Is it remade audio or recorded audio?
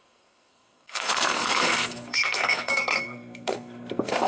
remade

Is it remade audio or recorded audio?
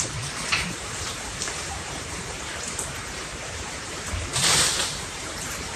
remade